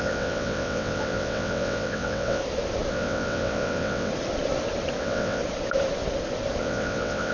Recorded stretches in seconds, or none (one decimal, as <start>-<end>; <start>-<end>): 2.4-2.9; 4.1-5.0; 5.4-6.6